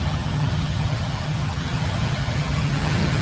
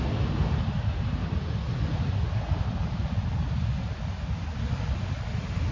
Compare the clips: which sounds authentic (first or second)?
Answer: second